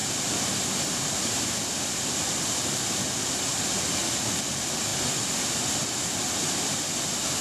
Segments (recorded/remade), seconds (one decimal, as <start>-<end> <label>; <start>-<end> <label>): 0.0-4.4 remade; 4.4-7.4 recorded